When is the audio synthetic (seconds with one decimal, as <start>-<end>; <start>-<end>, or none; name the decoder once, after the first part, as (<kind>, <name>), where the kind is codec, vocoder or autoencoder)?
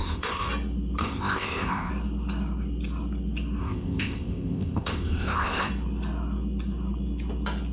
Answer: 0.0-0.5 (codec, ZipCodec); 1.0-1.9; 3.6-5.7